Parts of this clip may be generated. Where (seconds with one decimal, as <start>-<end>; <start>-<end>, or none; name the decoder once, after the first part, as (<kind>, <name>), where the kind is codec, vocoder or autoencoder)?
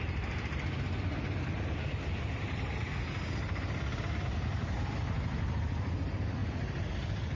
none